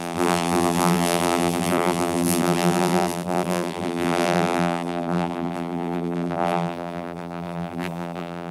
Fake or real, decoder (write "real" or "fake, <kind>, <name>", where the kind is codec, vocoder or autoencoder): fake, vocoder, BigVGAN v2